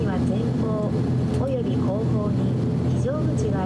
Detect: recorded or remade recorded